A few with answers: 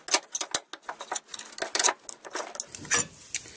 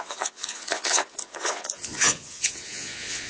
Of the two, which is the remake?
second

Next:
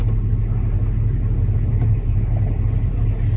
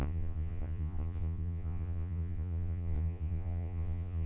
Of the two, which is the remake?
second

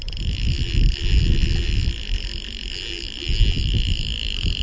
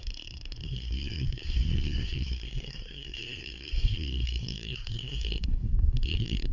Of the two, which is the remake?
second